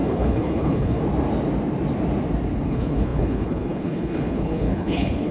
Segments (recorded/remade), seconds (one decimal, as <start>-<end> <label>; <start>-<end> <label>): 0.0-1.0 remade; 1.0-2.6 recorded; 2.6-5.3 remade